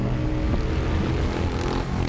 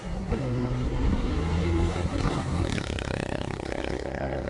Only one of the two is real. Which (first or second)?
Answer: first